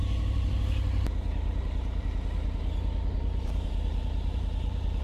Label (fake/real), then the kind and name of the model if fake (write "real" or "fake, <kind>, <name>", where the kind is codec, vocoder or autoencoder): fake, vocoder, BigVGAN v2